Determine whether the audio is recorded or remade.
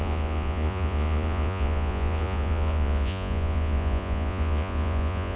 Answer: remade